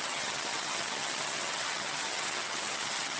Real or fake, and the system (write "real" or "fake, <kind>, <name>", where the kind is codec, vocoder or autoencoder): fake, vocoder, HiFi-GAN